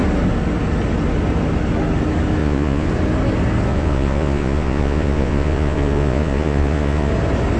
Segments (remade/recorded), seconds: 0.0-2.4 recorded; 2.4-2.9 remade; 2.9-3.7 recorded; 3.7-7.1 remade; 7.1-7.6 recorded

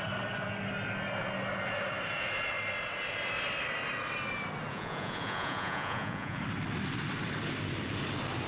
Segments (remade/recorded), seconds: 0.0-4.7 recorded; 4.7-6.4 remade; 6.4-8.5 recorded

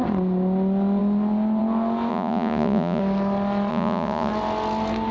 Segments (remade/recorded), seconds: 0.0-2.1 recorded; 2.1-3.0 remade; 3.0-3.7 recorded; 3.7-4.3 remade; 4.3-5.1 recorded

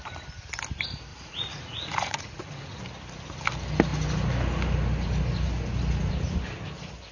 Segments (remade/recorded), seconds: 0.0-1.1 recorded; 1.1-2.8 remade; 2.8-7.1 recorded

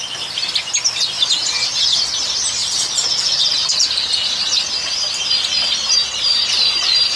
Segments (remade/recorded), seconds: 0.0-2.6 recorded; 2.6-3.5 remade; 3.5-7.2 recorded

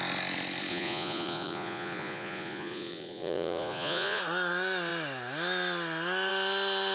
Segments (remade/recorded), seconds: 0.0-0.7 recorded; 0.7-4.2 remade; 4.2-6.9 recorded

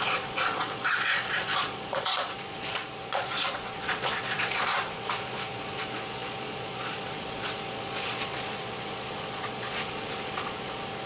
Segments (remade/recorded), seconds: 0.0-11.1 remade

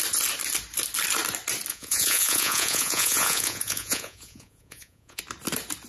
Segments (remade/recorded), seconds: 0.0-1.7 recorded; 1.7-5.2 remade; 5.2-5.9 recorded